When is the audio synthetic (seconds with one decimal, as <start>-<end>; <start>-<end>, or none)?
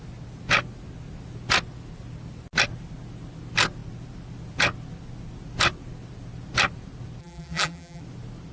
7.2-8.0